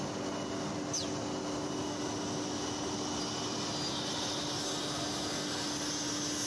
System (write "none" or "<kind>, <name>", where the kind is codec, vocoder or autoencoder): none